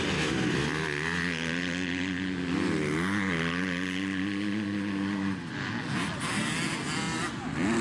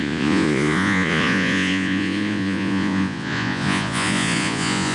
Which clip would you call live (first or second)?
first